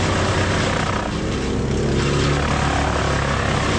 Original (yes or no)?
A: yes